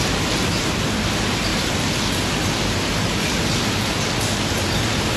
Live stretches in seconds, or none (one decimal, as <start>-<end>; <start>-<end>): 0.0-5.2